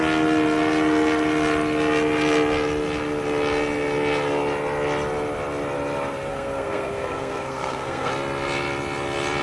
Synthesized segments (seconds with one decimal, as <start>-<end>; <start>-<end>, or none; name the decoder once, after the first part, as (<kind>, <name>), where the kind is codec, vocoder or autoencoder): 6.3-8.1 (codec, SNAC)